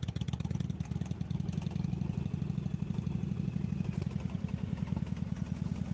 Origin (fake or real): real